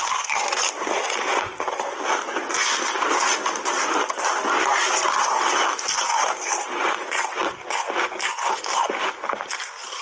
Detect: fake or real real